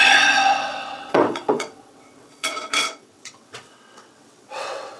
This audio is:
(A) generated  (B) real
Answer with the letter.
A